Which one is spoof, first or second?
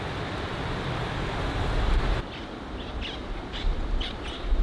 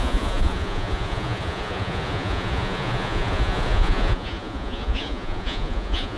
second